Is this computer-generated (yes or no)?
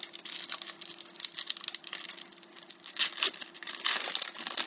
no